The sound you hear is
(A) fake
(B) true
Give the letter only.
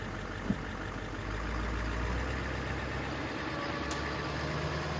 B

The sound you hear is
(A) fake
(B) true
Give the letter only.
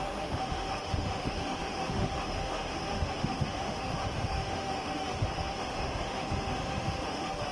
A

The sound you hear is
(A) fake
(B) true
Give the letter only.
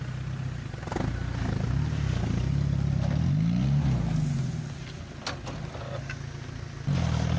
B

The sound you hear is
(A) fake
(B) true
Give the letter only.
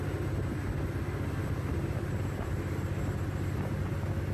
B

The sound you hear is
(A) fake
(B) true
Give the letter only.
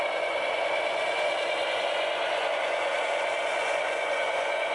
A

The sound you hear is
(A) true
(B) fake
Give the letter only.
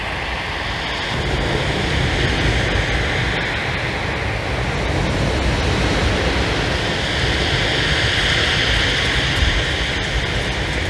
A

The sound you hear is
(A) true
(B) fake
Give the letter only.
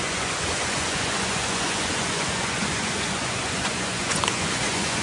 B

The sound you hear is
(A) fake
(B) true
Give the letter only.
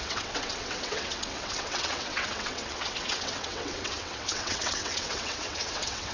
A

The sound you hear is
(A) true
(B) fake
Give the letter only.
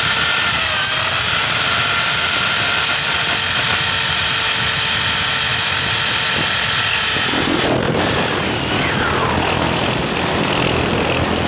A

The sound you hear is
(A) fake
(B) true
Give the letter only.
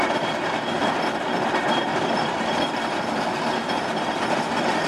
B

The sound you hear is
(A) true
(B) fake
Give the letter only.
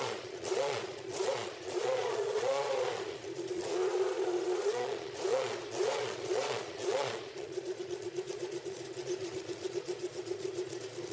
B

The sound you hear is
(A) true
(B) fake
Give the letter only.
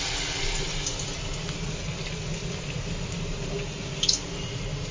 A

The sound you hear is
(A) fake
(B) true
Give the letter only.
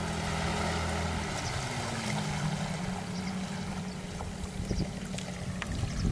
B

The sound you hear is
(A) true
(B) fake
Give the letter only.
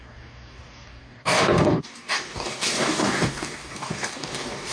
B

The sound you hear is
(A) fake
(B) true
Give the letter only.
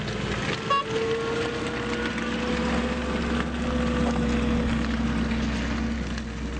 B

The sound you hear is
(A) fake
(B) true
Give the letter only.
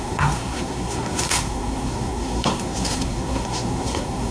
A